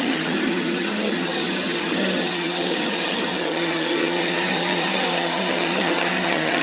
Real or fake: fake